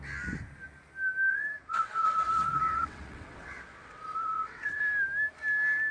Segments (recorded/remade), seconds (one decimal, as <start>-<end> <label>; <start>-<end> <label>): 0.0-1.3 recorded; 1.3-4.8 remade; 4.8-5.9 recorded